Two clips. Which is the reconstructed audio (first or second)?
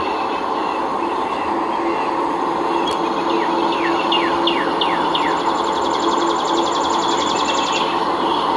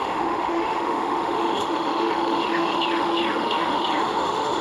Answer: second